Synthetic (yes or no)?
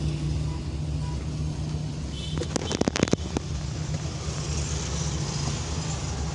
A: no